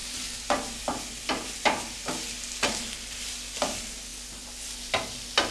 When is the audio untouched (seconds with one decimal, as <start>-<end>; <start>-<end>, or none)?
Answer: 0.0-5.5